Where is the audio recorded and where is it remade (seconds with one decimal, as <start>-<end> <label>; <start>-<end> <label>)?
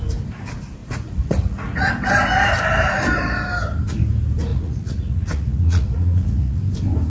0.0-0.8 recorded; 0.8-1.9 remade; 1.9-4.5 recorded; 4.5-6.6 remade; 6.6-7.1 recorded